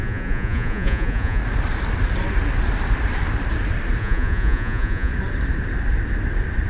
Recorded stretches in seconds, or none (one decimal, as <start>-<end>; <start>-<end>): 1.4-4.0; 5.1-6.7